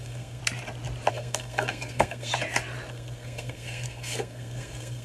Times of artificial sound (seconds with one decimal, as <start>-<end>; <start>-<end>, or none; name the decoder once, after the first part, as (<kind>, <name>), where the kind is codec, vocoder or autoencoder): 0.0-0.4 (codec, SNAC); 1.1-2.3; 2.9-5.0